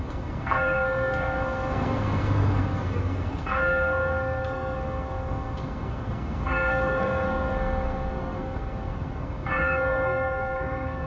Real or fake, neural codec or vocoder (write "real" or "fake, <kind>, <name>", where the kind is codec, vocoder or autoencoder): fake, codec, SNAC